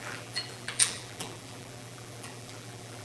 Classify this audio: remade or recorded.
remade